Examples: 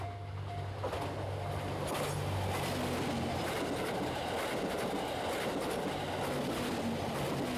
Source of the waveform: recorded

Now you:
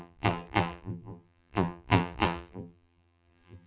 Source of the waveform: remade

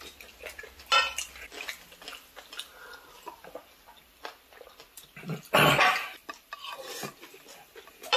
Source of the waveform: recorded